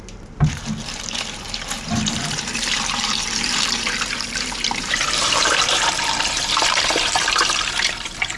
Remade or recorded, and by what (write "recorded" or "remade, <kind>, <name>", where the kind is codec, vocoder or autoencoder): remade, vocoder, BigVGAN v2